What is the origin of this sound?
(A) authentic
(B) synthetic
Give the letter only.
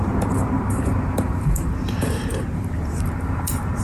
B